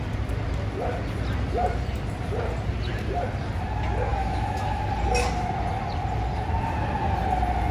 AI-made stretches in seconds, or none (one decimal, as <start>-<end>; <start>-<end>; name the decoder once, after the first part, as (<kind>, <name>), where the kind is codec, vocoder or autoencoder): 4.1-4.8 (autoencoder, DAC-VAE)

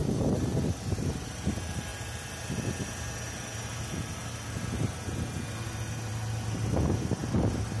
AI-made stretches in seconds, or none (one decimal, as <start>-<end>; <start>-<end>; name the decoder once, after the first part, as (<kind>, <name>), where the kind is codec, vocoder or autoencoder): none

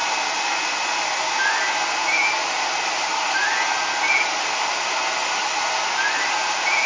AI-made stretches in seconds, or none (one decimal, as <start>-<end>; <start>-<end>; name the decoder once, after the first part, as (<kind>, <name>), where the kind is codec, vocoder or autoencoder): none

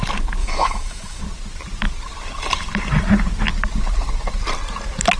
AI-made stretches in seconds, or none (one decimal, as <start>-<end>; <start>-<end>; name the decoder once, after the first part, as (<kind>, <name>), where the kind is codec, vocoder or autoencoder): 0.4-1.2 (autoencoder, DAC-VAE)

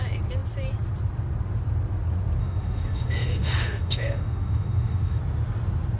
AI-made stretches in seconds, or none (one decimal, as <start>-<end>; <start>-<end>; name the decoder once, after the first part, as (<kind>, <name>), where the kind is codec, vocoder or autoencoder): 2.4-5.2 (autoencoder, DAC-VAE)

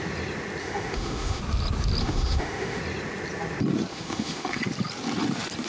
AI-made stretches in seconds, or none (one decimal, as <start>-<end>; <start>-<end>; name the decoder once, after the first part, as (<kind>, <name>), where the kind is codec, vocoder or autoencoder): 0.6-1.4 (autoencoder, DAC-VAE); 2.0-2.8; 3.9-4.6